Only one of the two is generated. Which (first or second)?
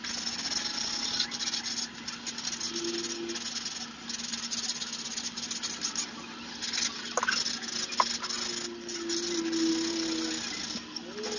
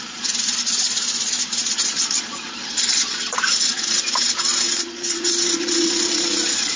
second